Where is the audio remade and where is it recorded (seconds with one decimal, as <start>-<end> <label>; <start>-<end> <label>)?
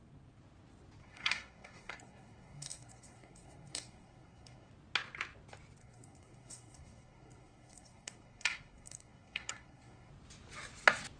0.0-1.0 recorded; 1.0-4.7 remade; 4.7-5.8 recorded; 5.8-10.1 remade; 10.1-11.2 recorded